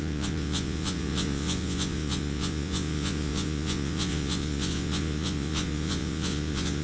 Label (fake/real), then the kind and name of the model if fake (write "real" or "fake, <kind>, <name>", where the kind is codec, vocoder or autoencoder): fake, vocoder, Vocos